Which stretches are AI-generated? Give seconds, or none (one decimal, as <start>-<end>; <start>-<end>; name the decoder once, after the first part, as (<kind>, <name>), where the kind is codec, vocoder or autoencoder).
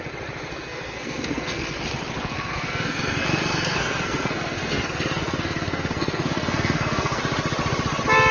0.5-1.8 (codec, SNAC); 2.2-7.2